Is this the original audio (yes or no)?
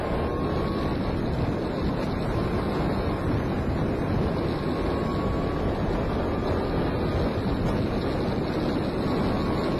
yes